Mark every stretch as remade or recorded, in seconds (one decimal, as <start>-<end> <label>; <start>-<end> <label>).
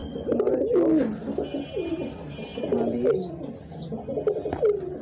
0.0-0.5 recorded; 0.5-4.1 remade; 4.1-4.6 recorded; 4.6-5.0 remade